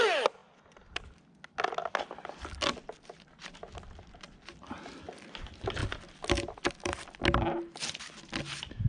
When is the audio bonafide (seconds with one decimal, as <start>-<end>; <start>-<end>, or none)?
0.0-8.9